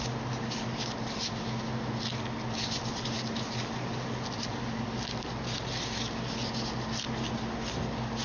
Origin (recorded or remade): recorded